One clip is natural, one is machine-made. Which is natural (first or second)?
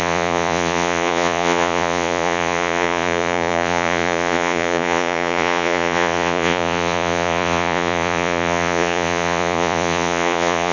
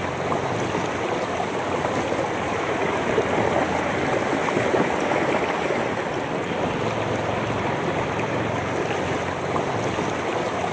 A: second